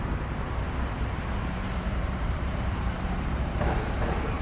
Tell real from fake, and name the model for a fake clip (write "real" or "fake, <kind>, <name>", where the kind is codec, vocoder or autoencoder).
fake, vocoder, BigVGAN v2